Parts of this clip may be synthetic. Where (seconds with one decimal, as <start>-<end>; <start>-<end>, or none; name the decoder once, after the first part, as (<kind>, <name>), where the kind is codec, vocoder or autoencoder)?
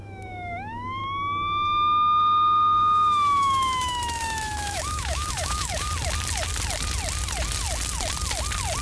0.0-1.0 (autoencoder, DAC-VAE); 2.2-5.9